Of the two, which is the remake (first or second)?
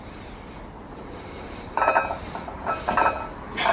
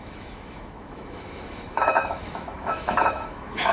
second